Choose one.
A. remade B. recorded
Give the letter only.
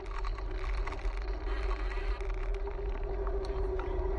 B